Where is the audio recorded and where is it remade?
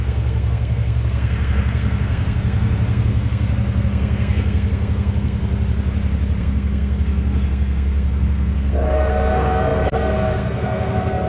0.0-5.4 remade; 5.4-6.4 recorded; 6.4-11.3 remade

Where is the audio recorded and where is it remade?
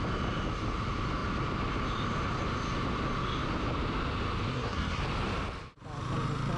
0.0-4.5 recorded; 4.5-5.0 remade; 5.0-6.6 recorded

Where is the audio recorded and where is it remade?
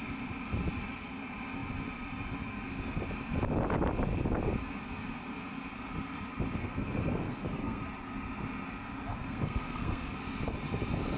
0.0-6.6 recorded; 6.6-7.8 remade; 7.8-9.1 recorded; 9.1-10.1 remade; 10.1-11.2 recorded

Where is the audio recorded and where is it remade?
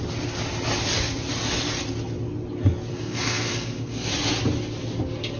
0.0-2.9 recorded; 2.9-4.1 remade; 4.1-5.4 recorded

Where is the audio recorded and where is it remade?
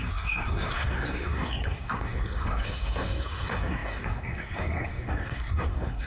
0.0-6.1 remade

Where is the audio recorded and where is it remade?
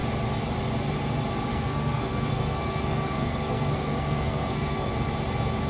0.0-1.5 recorded; 1.5-4.9 remade; 4.9-5.7 recorded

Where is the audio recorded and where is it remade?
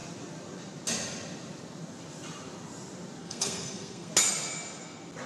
0.0-3.2 recorded; 3.2-4.1 remade; 4.1-5.3 recorded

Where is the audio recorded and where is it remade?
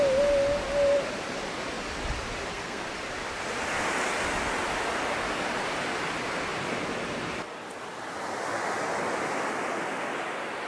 0.0-2.5 recorded; 2.5-3.0 remade; 3.0-10.7 recorded